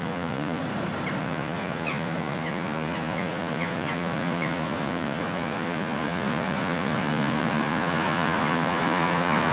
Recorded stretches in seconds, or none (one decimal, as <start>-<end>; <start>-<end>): 0.6-1.2